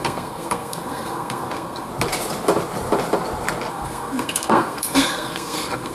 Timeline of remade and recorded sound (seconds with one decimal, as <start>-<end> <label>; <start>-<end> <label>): 0.0-1.9 remade; 1.9-3.7 recorded; 3.7-5.9 remade